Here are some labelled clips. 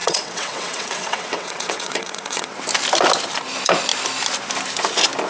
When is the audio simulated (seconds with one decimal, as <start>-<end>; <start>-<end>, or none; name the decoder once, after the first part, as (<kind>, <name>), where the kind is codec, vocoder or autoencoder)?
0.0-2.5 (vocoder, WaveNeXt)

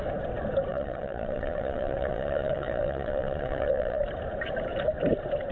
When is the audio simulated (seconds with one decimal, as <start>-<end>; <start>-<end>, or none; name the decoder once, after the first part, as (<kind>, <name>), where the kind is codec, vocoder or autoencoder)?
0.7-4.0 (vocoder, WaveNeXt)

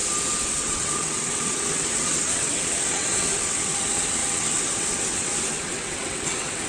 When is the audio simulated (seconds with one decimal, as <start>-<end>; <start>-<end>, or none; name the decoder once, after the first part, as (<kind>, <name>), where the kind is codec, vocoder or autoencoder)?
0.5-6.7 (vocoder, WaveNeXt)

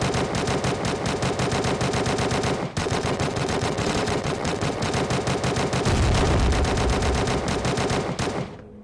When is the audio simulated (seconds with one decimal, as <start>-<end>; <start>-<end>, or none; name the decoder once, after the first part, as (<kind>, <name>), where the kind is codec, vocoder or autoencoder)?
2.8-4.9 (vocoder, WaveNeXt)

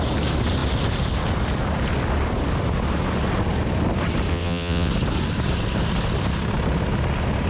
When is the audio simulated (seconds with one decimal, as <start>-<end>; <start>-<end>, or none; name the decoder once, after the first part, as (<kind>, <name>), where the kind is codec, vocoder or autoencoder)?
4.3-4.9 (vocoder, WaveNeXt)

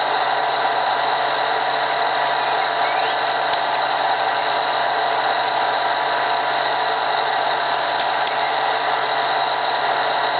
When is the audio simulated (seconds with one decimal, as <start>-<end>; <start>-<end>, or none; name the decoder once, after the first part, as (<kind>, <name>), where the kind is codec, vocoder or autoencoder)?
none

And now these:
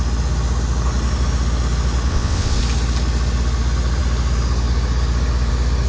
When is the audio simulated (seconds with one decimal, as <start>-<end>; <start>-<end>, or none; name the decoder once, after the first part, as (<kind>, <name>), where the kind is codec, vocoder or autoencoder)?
2.1-2.6 (vocoder, WaveNeXt)